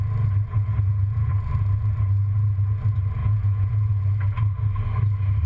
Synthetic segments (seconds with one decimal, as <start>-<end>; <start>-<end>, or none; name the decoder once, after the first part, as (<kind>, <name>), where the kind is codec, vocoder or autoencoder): 0.7-1.3 (vocoder, Vocos); 3.2-3.9